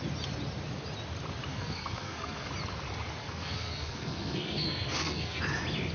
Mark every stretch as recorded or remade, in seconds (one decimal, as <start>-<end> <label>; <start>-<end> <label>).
0.0-1.5 recorded; 1.5-2.5 remade; 2.5-3.2 recorded; 3.2-5.4 remade; 5.4-5.9 recorded